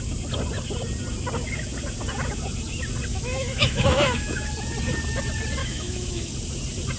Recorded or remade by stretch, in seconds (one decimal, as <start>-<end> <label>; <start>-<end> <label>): 0.0-3.1 recorded; 3.1-4.5 remade; 4.5-5.6 recorded; 5.6-6.3 remade; 6.3-7.0 recorded